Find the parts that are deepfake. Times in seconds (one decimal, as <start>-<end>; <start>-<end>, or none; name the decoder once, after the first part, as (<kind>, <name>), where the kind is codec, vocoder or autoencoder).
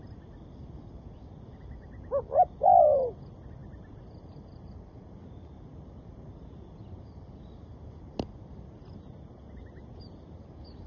none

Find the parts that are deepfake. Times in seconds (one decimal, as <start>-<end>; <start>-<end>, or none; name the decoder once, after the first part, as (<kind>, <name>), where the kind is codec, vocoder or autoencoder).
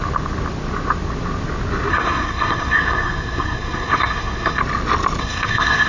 1.9-4.6 (codec, SNAC); 5.2-5.9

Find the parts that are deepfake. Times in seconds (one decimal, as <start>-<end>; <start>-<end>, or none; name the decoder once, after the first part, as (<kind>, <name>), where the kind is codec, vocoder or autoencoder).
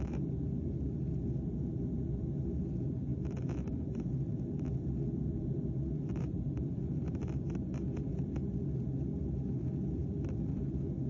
3.1-3.7 (vocoder, BigVGAN v2); 4.3-7.4; 10.0-10.6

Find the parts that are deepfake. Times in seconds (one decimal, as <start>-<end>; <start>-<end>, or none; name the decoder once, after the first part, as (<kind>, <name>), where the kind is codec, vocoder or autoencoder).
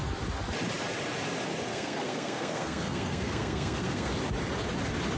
1.7-4.1 (codec, SNAC)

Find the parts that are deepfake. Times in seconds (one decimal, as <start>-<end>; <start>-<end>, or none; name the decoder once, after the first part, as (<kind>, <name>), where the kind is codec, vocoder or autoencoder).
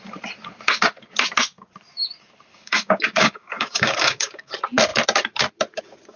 2.5-4.5 (codec, DAC)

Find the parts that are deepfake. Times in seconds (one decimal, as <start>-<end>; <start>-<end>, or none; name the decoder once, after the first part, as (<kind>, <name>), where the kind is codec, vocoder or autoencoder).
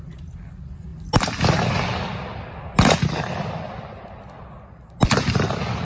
none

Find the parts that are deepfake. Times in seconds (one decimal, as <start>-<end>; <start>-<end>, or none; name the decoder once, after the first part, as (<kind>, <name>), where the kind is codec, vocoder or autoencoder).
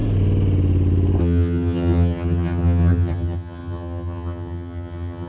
1.2-5.3 (vocoder, HiFi-GAN)